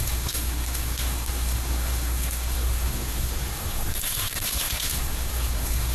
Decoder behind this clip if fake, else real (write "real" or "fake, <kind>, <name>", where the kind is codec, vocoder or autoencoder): fake, codec, SNAC